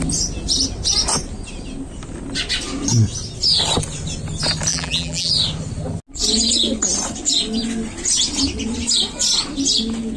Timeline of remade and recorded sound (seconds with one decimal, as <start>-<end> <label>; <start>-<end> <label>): 0.0-4.7 recorded; 4.7-5.3 remade; 5.3-10.2 recorded